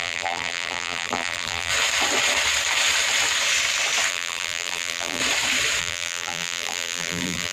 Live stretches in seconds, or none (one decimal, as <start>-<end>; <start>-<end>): 1.7-4.1; 5.2-5.8